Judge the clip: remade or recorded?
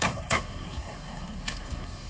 remade